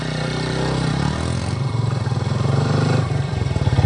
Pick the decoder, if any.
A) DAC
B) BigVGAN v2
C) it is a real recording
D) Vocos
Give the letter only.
B